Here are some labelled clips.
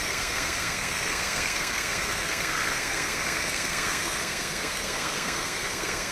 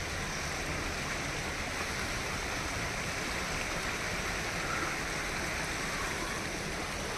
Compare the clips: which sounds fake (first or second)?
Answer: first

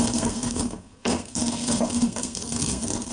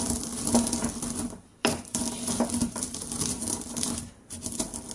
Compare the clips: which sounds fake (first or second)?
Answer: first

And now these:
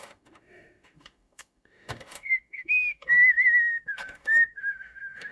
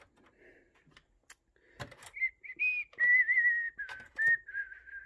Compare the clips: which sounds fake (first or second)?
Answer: first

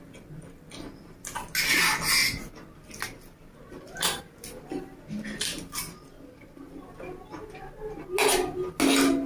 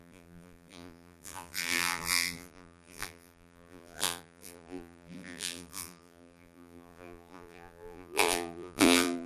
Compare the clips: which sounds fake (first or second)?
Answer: second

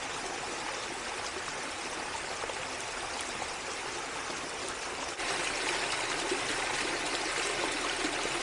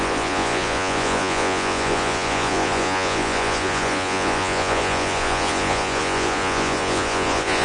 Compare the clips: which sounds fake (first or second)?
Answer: second